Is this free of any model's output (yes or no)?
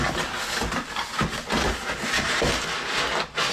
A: yes